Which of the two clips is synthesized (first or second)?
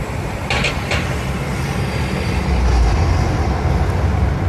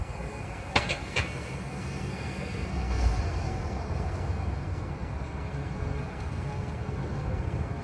second